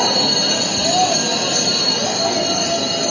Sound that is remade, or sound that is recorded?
recorded